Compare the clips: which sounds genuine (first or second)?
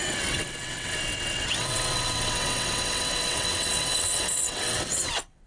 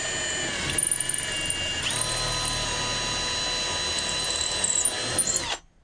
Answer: second